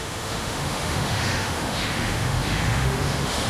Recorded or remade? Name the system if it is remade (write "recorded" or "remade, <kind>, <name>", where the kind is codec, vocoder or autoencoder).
remade, autoencoder, DAC-VAE